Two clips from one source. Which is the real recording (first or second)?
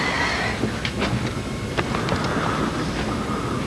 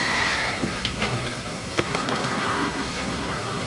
first